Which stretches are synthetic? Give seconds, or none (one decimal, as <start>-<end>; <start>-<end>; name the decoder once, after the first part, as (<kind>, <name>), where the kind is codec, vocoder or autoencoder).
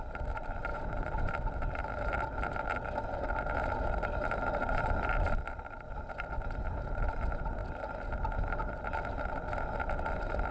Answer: 0.7-1.3 (vocoder, Vocos)